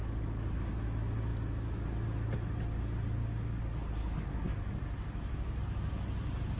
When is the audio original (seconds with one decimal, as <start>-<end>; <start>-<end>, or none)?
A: 0.7-3.2; 5.6-6.6